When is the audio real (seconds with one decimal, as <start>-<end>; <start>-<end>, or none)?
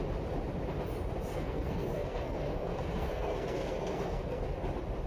0.0-1.3; 4.4-5.1